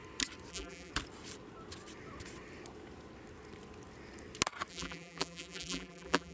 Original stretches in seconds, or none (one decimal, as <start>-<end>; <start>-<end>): 0.0-0.5; 0.9-4.7